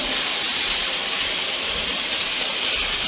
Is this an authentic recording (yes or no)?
no